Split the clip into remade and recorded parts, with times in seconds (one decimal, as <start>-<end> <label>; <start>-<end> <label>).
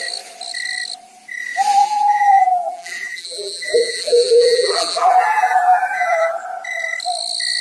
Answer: 0.0-1.8 recorded; 1.8-6.4 remade; 6.4-7.6 recorded